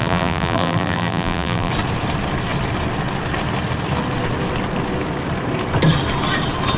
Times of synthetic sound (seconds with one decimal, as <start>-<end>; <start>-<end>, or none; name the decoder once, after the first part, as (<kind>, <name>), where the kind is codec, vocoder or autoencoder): 0.0-1.7 (vocoder, BigVGAN v2)